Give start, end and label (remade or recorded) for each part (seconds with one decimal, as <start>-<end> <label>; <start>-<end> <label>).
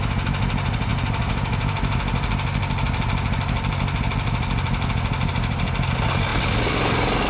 0.0-7.3 recorded